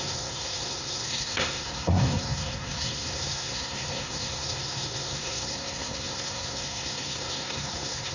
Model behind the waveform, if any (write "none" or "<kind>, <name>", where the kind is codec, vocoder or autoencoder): codec, SNAC